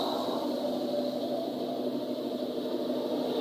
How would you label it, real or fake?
fake